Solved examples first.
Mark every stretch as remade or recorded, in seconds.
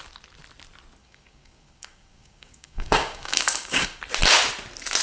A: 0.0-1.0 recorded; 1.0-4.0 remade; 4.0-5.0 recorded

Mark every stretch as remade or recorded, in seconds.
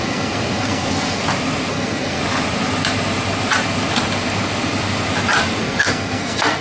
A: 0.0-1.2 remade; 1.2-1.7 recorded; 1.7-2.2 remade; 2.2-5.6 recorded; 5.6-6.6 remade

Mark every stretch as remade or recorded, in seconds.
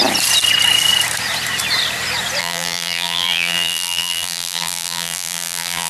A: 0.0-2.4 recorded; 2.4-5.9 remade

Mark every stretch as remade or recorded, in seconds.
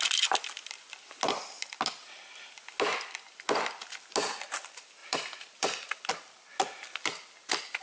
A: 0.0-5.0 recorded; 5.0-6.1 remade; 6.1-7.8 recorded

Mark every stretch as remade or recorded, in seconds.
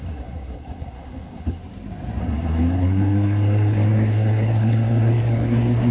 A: 0.0-1.6 remade; 1.6-2.2 recorded; 2.2-5.9 remade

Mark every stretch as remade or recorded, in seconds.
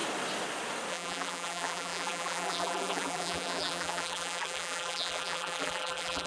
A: 0.0-0.9 recorded; 0.9-6.3 remade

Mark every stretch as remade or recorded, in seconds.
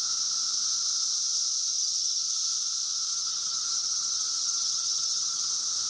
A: 0.0-1.7 recorded; 1.7-2.3 remade; 2.3-3.1 recorded; 3.1-5.5 remade; 5.5-5.9 recorded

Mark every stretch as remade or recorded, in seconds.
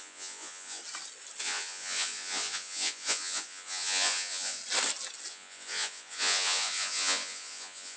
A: 0.0-0.8 remade; 0.8-1.4 recorded; 1.4-4.6 remade; 4.6-5.3 recorded; 5.3-8.0 remade